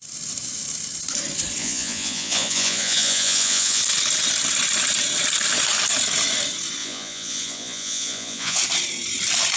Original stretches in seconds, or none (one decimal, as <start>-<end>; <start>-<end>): 0.0-1.6; 3.8-6.8; 8.6-9.6